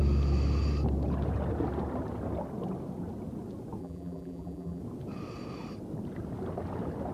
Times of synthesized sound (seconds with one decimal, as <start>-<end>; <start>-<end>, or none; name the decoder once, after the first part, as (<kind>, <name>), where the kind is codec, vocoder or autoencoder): 3.8-4.8 (vocoder, BigVGAN v2)